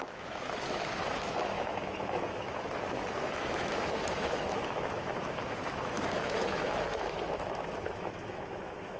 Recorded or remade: remade